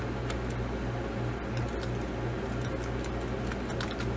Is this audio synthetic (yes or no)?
no